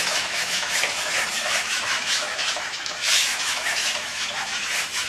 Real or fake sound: fake